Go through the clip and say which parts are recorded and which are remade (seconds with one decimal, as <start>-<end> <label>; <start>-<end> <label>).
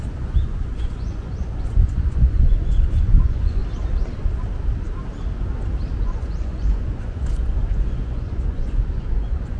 0.0-3.6 remade; 3.6-6.0 recorded; 6.0-9.6 remade